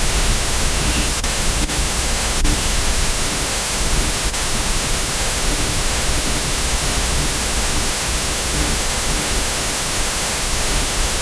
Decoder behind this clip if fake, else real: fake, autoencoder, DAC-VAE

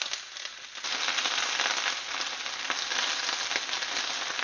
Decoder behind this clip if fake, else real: real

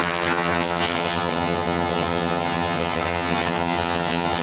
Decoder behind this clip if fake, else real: fake, vocoder, HiFi-GAN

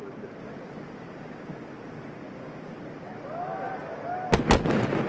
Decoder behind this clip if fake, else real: real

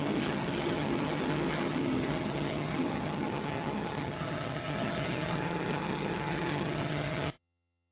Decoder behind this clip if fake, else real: fake, vocoder, HiFi-GAN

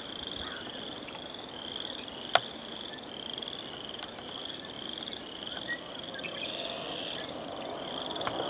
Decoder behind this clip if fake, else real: real